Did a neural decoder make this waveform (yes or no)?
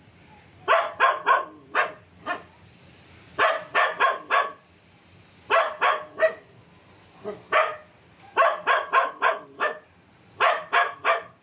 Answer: no